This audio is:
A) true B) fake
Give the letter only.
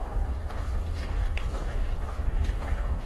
B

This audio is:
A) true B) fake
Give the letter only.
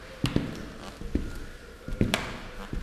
A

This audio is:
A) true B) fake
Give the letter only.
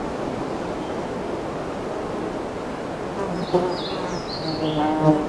A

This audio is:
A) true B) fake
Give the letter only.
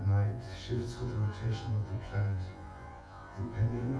B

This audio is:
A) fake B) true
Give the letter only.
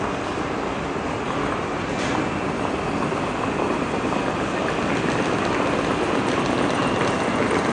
B